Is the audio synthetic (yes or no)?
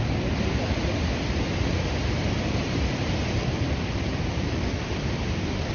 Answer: no